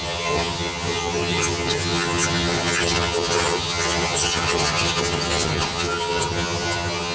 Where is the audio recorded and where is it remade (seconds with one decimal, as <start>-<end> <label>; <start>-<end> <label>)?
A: 0.0-7.1 remade